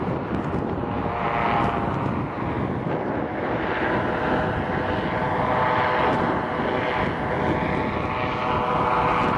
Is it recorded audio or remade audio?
recorded